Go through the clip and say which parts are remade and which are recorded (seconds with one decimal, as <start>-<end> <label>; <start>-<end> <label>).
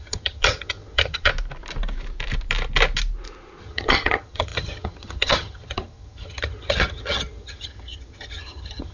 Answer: 0.0-1.3 remade; 1.3-3.6 recorded; 3.6-8.9 remade